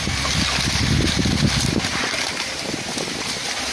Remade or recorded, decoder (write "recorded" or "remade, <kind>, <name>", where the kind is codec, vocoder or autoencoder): recorded